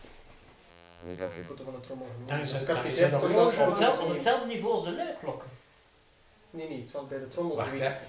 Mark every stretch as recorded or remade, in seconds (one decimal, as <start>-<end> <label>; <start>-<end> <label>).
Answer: 0.0-0.7 recorded; 0.7-1.5 remade; 1.5-8.1 recorded